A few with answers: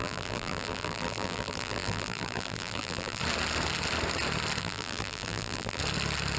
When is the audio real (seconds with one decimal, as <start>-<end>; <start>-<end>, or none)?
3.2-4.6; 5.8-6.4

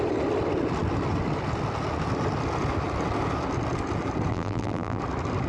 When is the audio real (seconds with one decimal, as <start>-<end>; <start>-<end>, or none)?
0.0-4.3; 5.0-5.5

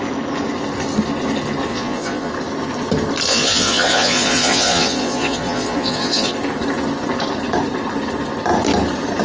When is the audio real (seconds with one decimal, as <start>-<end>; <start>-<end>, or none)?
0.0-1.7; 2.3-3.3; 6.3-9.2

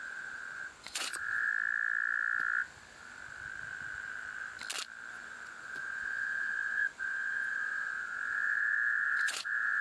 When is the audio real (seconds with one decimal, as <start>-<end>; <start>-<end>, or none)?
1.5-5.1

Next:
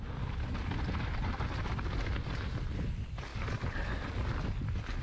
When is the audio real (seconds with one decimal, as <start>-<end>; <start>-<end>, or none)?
0.0-0.6; 2.6-3.3; 4.1-5.0

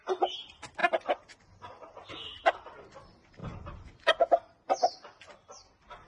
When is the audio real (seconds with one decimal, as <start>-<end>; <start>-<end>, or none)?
0.0-6.1

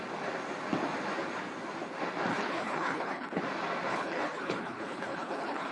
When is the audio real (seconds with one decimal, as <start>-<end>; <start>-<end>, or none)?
0.0-2.3; 3.4-3.9